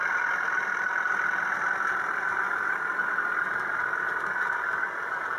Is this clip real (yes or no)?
yes